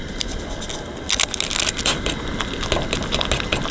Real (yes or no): yes